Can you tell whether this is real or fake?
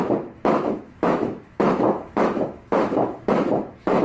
fake